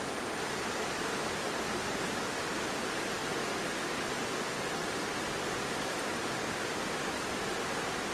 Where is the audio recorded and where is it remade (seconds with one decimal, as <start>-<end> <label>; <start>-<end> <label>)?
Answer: 0.0-8.1 recorded